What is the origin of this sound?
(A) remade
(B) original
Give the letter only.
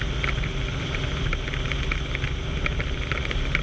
B